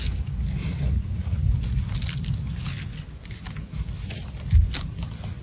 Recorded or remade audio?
recorded